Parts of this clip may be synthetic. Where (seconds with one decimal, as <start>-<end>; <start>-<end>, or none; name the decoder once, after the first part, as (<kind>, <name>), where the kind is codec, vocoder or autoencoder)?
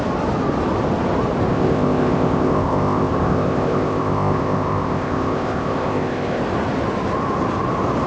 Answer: 1.5-6.4 (codec, ZipCodec)